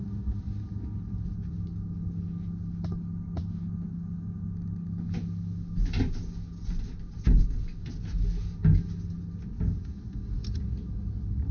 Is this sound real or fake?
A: real